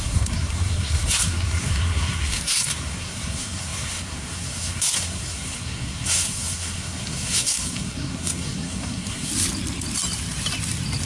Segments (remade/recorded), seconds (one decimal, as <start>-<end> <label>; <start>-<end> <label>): 0.0-9.3 remade; 9.3-11.1 recorded

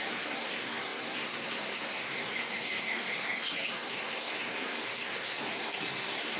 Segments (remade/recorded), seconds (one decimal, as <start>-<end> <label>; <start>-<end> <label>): 0.0-6.4 remade

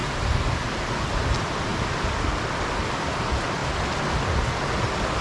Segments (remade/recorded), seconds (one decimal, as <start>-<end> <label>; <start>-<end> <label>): 0.0-5.2 recorded

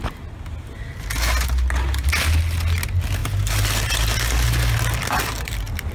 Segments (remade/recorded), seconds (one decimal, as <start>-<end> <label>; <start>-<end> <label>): 0.0-5.9 recorded

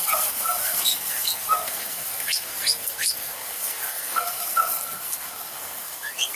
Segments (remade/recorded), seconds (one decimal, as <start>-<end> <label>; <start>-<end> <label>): 0.0-6.4 remade

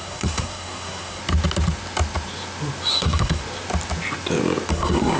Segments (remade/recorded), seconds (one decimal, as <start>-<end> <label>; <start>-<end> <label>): 0.0-1.2 remade; 1.2-2.9 recorded; 2.9-3.4 remade; 3.4-4.7 recorded; 4.7-5.2 remade